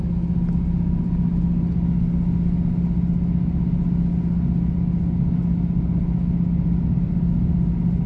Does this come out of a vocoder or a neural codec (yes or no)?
no